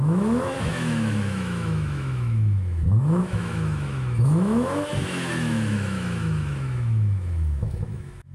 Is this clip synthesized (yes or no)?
yes